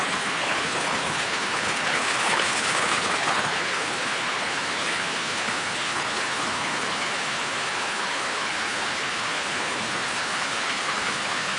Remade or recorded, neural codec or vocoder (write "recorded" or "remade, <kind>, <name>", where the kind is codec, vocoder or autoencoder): remade, codec, HILCodec